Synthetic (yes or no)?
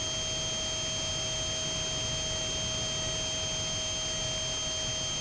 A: no